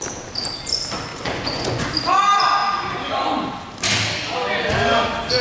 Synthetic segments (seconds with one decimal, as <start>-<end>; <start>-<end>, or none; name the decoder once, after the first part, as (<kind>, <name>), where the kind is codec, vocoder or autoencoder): 1.1-1.9 (vocoder, Vocos)